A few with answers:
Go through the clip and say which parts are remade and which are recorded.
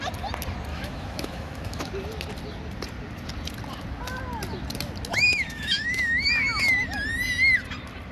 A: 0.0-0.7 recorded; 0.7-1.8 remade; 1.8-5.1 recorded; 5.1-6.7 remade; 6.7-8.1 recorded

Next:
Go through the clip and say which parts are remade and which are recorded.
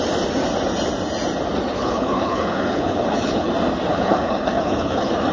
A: 0.0-1.7 recorded; 1.7-3.5 remade; 3.5-3.9 recorded; 3.9-5.3 remade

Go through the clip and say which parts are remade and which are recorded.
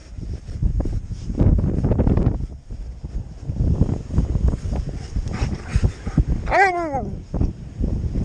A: 0.0-8.2 recorded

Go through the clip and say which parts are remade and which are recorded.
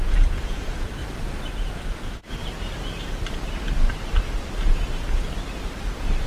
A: 0.0-1.0 remade; 1.0-1.5 recorded; 1.5-2.4 remade; 2.4-6.3 recorded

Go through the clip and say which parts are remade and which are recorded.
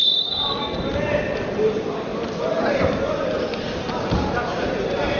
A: 0.0-0.6 remade; 0.6-5.2 recorded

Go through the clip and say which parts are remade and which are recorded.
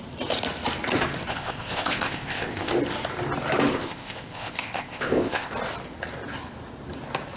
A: 0.0-1.3 recorded; 1.3-2.7 remade; 2.7-3.7 recorded; 3.7-5.5 remade; 5.5-7.4 recorded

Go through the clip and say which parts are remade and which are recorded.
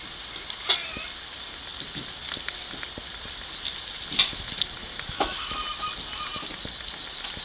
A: 0.0-7.4 recorded